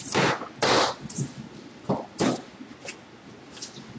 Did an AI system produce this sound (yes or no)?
no